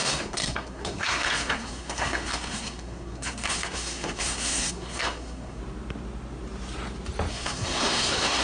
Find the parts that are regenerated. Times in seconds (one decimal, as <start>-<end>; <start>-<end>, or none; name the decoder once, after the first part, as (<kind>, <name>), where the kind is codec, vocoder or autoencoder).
0.0-5.6 (codec, SNAC); 7.3-8.4